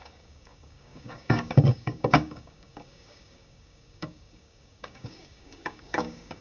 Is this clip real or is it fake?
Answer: fake